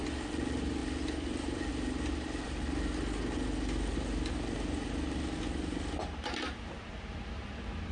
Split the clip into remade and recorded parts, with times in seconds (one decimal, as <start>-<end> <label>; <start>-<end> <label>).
0.0-0.8 recorded; 0.8-1.7 remade; 1.7-7.9 recorded